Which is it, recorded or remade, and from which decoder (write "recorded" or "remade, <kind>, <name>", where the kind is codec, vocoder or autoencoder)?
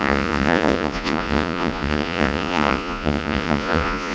remade, vocoder, Vocos